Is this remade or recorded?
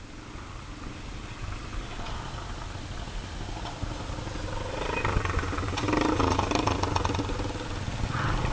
recorded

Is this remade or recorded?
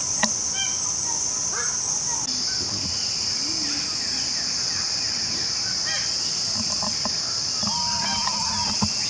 recorded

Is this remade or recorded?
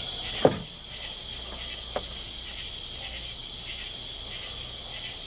recorded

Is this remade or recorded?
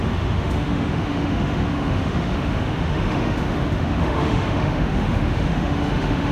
remade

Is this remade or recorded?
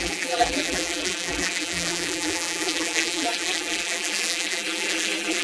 remade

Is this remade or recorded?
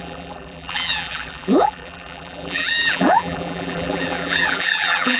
remade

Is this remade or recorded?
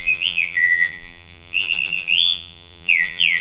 remade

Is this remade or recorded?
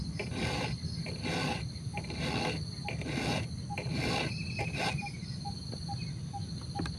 recorded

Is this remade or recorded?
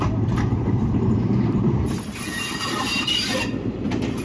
remade